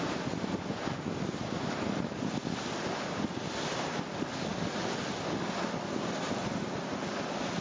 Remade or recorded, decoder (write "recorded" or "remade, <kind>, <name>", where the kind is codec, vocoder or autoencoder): recorded